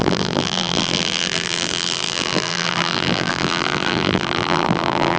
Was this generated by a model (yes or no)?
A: yes